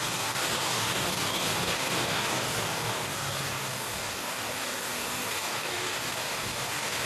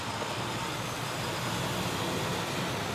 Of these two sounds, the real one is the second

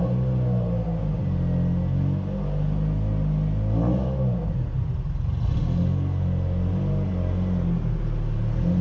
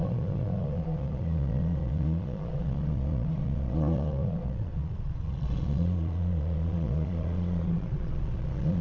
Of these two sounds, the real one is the first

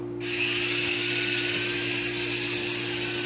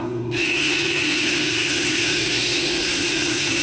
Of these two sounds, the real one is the first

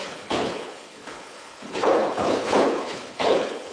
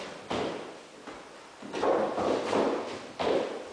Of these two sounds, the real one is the second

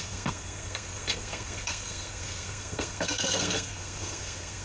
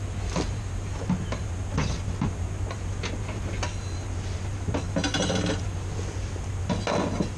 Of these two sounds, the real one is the second